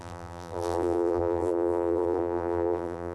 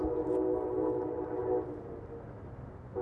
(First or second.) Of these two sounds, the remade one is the first